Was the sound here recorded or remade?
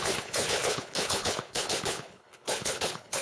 remade